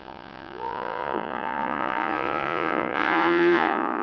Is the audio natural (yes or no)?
no